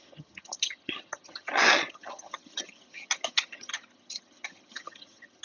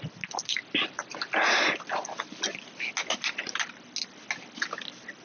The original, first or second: second